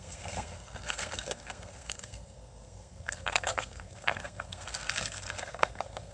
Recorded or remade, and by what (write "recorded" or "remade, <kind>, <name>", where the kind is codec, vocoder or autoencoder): remade, codec, SNAC